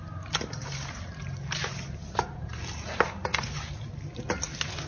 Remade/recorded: recorded